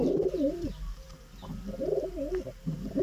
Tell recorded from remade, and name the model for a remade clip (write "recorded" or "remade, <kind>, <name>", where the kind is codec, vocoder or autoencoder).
remade, vocoder, BigVGAN v2